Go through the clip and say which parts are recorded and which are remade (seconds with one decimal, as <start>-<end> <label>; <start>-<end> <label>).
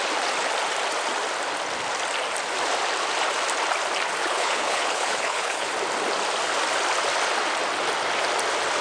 0.0-4.2 recorded; 4.2-5.7 remade; 5.7-8.8 recorded